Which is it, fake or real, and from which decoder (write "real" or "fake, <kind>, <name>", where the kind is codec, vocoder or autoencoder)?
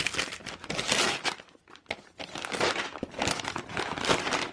real